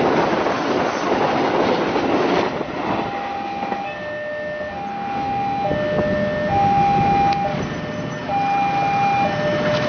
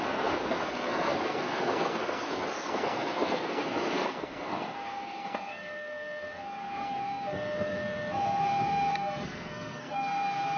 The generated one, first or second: second